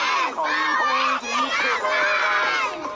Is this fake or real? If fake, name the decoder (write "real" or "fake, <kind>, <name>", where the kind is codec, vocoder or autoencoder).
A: real